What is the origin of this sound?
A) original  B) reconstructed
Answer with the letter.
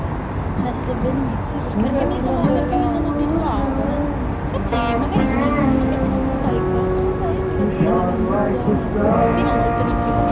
A